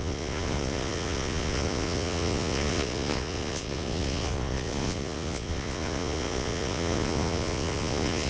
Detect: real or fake fake